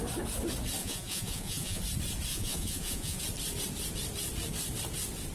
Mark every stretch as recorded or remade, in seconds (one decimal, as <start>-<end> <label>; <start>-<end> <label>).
0.0-0.8 recorded; 0.8-1.8 remade; 1.8-2.3 recorded; 2.3-3.2 remade; 3.2-5.3 recorded